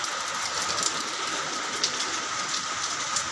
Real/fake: real